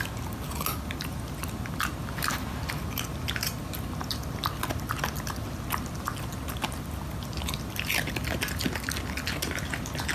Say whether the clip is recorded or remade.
recorded